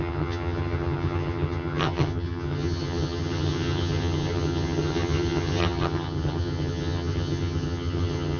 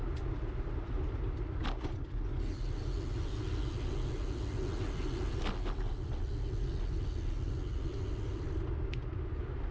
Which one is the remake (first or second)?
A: first